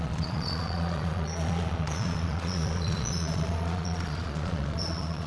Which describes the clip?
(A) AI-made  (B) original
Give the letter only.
A